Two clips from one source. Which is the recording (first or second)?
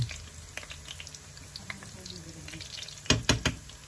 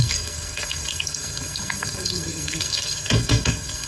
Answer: first